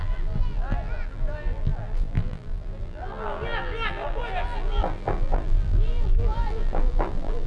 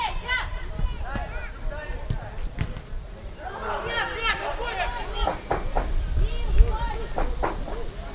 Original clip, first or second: second